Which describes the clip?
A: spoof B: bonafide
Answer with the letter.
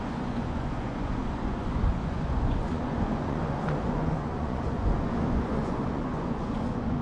A